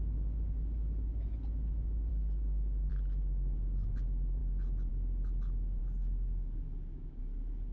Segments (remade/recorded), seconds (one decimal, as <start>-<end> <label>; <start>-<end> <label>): 0.0-2.1 recorded; 2.1-2.9 remade; 2.9-5.8 recorded; 5.8-7.2 remade; 7.2-7.7 recorded